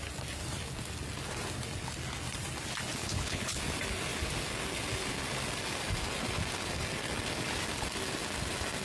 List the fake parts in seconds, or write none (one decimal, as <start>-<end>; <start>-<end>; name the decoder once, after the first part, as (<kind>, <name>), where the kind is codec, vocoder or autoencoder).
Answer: 3.0-3.6 (codec, HILCodec)